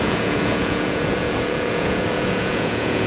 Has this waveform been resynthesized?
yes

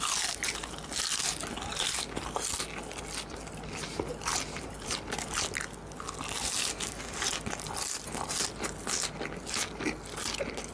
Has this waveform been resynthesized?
no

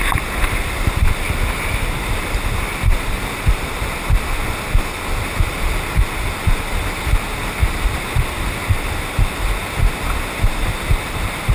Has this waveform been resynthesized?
no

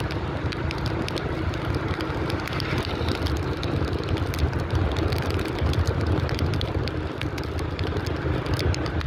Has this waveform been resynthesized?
no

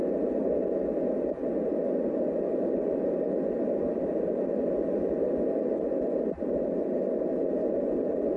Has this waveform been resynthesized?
no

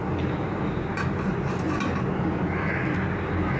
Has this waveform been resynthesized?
no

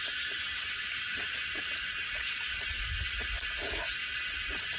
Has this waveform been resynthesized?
no